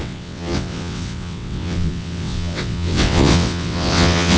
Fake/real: fake